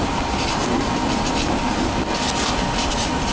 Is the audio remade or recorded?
recorded